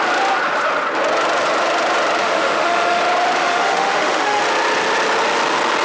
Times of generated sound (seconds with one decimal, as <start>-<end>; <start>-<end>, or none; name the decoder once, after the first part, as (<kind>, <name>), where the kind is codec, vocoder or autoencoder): 2.2-3.0 (autoencoder, DAC-VAE); 3.4-4.4